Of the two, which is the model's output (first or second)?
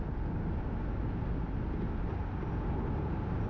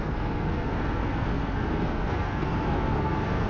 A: second